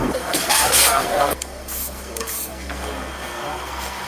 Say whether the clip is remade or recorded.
remade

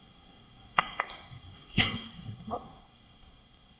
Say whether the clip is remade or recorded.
remade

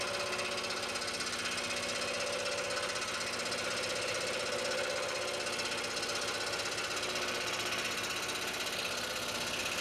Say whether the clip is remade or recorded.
recorded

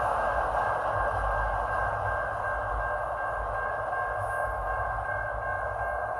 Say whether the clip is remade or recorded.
recorded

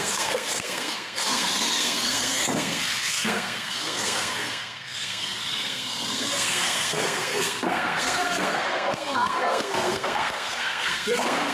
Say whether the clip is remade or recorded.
remade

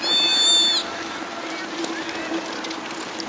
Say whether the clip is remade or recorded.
recorded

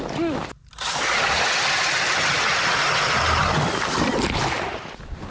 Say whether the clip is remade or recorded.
recorded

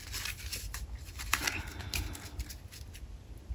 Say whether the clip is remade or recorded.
recorded